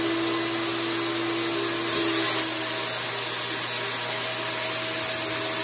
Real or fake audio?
real